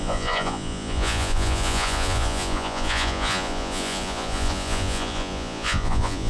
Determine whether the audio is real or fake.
fake